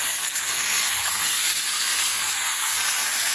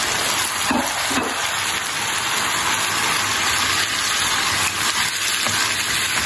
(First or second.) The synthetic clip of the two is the first